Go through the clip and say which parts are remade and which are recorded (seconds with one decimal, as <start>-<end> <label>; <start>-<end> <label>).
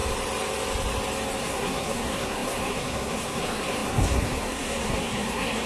0.0-1.4 recorded; 1.4-5.7 remade